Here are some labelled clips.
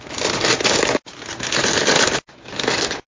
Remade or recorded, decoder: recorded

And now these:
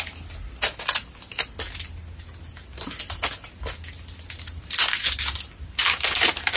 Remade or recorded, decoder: recorded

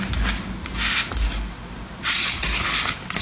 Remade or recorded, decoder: recorded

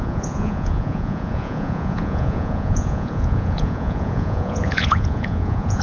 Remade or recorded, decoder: remade, vocoder, Vocos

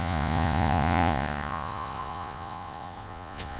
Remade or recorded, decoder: remade, vocoder, Vocos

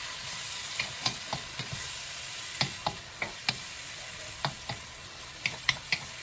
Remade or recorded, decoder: recorded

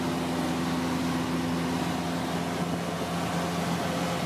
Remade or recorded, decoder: recorded